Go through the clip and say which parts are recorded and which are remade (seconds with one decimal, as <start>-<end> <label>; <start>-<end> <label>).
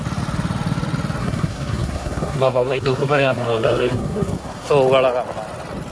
0.0-1.2 recorded; 1.2-4.7 remade; 4.7-5.9 recorded